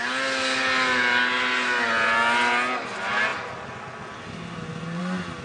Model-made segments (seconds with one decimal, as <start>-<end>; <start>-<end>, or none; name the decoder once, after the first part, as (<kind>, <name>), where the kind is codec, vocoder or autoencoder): none